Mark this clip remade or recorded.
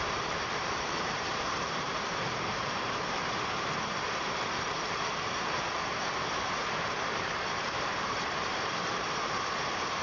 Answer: remade